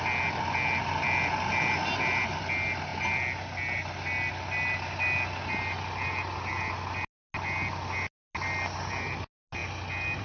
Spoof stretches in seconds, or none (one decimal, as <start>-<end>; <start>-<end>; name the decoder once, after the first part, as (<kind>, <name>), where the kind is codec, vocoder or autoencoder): none